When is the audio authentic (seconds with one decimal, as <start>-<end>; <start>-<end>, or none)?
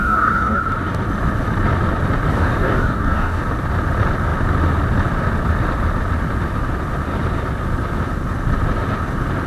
0.6-2.3; 3.4-9.5